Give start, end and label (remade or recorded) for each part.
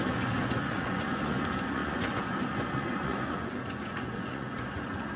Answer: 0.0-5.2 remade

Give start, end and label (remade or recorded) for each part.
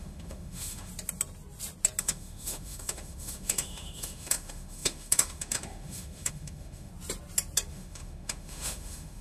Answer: 0.0-0.9 remade; 0.9-2.0 recorded; 2.0-6.9 remade; 6.9-7.7 recorded; 7.7-9.2 remade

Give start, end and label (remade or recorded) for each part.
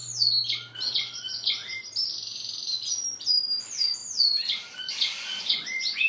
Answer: 0.0-0.9 recorded; 0.9-1.6 remade; 1.6-3.6 recorded; 3.6-4.0 remade; 4.0-5.4 recorded; 5.4-6.1 remade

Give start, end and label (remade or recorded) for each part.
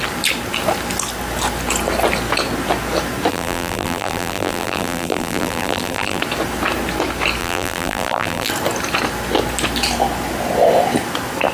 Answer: 0.0-3.3 recorded; 3.3-6.2 remade; 6.2-7.4 recorded; 7.4-8.5 remade; 8.5-11.5 recorded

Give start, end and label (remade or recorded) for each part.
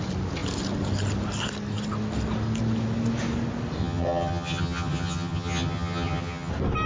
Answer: 0.0-3.8 recorded; 3.8-6.5 remade; 6.5-6.9 recorded